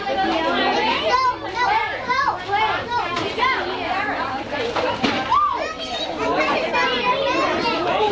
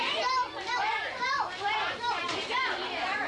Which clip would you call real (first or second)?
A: first